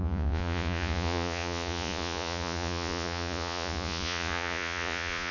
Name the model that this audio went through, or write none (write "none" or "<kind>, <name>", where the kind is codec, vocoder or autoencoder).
vocoder, Vocos